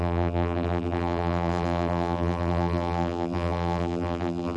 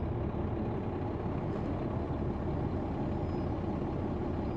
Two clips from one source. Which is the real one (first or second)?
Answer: second